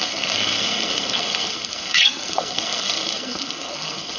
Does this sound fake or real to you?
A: fake